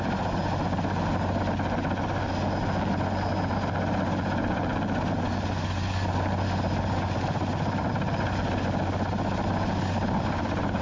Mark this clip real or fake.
real